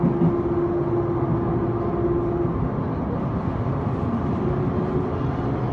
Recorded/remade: recorded